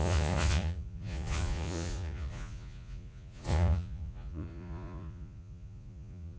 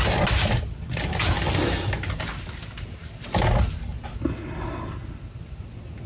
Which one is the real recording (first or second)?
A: second